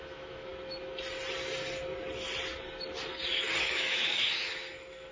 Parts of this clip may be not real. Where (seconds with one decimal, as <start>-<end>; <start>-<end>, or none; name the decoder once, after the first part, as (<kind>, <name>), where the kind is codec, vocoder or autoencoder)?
0.0-0.5 (autoencoder, DAC-VAE); 3.6-5.1

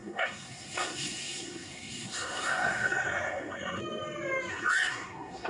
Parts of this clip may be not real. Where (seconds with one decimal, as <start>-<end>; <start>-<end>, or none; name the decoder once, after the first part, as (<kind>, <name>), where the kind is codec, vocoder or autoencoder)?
0.0-3.8 (codec, SNAC); 4.5-5.5